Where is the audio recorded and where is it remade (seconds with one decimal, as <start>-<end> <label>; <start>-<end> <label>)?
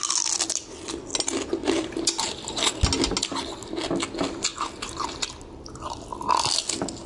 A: 0.0-1.6 recorded; 1.6-2.7 remade; 2.7-4.5 recorded; 4.5-5.3 remade; 5.3-7.1 recorded